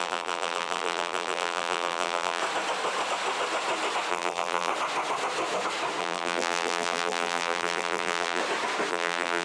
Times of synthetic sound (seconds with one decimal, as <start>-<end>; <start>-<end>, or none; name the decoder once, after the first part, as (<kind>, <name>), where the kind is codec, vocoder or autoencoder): 0.0-2.4 (vocoder, BigVGAN v2); 4.1-4.7; 6.0-8.4; 8.9-9.4